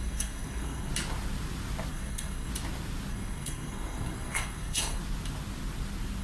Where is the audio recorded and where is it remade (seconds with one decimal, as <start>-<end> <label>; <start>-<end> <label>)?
0.0-0.9 remade; 0.9-1.9 recorded; 1.9-2.5 remade; 2.5-3.1 recorded; 3.1-5.0 remade; 5.0-6.2 recorded